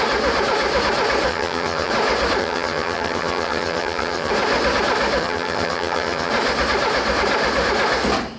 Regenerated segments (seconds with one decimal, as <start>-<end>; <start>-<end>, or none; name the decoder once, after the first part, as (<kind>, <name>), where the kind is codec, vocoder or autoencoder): 1.3-1.9 (vocoder, HiFi-GAN); 2.4-4.3; 5.2-6.3